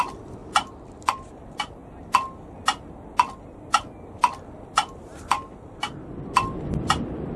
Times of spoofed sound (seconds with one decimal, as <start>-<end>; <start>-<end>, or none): 0.0-0.4; 1.1-1.8; 4.6-5.1; 5.7-7.4